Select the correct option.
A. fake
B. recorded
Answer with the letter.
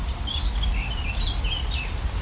B